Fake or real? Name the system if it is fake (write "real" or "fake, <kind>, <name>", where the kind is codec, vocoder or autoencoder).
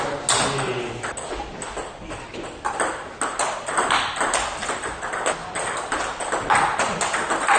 real